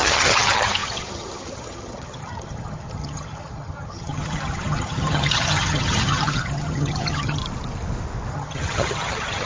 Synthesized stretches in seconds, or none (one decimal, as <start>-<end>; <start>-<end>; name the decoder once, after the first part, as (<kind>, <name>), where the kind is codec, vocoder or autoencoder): 0.0-7.4 (vocoder, HiFi-GAN); 8.3-9.5